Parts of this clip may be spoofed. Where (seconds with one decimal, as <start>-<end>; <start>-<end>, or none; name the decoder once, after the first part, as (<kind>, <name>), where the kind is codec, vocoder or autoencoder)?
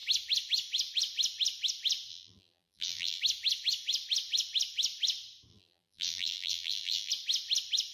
2.1-3.2 (vocoder, BigVGAN v2); 5.5-7.1